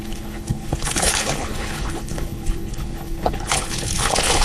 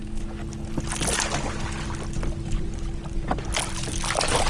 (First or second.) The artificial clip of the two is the first